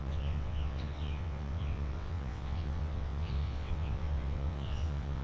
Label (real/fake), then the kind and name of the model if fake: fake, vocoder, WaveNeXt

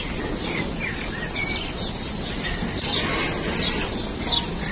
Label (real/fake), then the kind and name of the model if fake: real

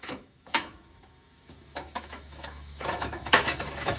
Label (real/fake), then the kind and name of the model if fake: fake, autoencoder, DAC-VAE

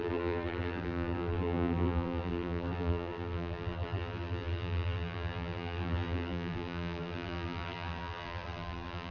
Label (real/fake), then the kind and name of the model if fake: fake, vocoder, BigVGAN v2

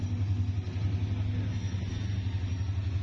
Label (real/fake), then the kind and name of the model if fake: real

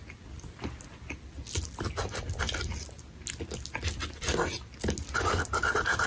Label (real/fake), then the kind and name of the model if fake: real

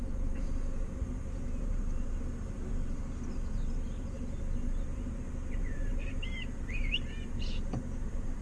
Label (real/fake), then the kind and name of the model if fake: fake, vocoder, BigVGAN v2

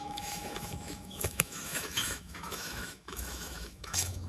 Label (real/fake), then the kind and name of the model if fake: fake, autoencoder, DAC-VAE